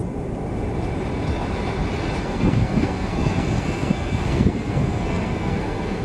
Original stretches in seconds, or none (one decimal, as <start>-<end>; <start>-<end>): 0.0-2.2